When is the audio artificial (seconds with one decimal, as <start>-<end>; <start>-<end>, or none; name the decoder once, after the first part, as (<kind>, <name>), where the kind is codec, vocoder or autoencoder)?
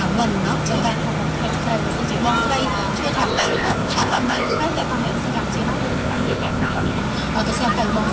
3.3-4.6 (codec, ZipCodec); 5.9-7.0